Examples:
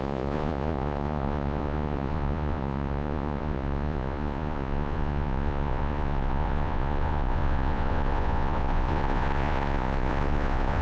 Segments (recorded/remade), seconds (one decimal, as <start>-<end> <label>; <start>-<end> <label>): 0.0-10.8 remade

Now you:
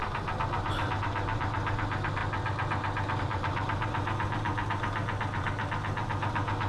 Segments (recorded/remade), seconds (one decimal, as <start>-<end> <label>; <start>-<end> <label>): 0.0-1.0 recorded; 1.0-2.2 remade; 2.2-3.2 recorded; 3.2-6.7 remade

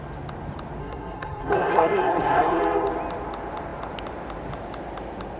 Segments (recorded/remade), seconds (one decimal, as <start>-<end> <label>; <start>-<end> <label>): 0.0-0.8 recorded; 0.8-2.6 remade; 2.6-5.4 recorded